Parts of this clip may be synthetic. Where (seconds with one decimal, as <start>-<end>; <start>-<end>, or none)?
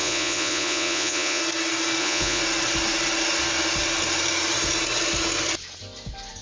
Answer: 0.0-1.4; 2.0-2.4